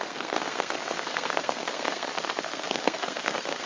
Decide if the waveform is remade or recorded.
remade